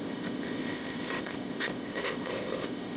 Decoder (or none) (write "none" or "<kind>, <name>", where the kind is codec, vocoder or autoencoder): codec, ZipCodec